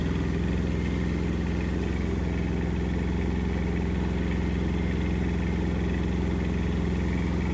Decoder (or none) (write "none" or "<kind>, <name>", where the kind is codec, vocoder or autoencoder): none